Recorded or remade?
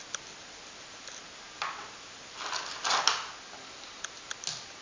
recorded